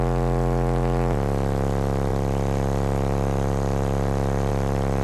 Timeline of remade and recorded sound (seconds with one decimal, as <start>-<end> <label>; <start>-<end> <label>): 0.0-5.0 recorded